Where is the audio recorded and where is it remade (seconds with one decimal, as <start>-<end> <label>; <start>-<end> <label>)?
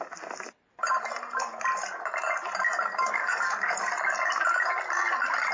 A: 0.0-2.9 recorded; 2.9-3.9 remade; 3.9-5.5 recorded